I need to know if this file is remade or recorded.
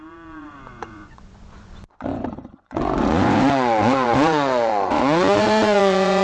remade